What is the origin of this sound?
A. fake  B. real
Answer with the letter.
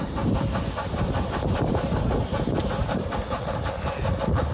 B